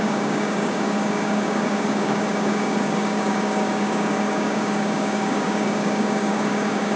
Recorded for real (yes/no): no